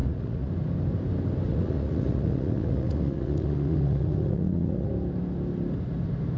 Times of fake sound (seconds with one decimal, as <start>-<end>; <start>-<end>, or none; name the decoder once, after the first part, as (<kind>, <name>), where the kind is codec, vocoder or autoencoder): 0.0-0.5 (vocoder, Vocos); 1.5-4.9